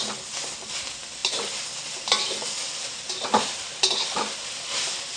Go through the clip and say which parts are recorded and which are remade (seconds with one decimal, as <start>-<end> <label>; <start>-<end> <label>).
0.0-5.2 recorded